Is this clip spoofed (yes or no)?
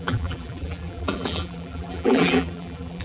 yes